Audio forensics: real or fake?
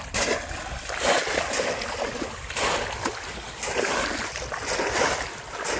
real